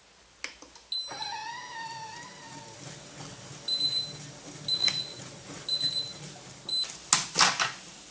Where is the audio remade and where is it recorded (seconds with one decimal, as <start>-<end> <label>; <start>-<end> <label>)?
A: 0.0-4.8 recorded; 4.8-5.6 remade; 5.6-8.1 recorded